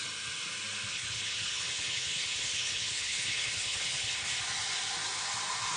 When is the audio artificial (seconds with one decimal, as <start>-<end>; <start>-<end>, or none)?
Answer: 0.9-4.4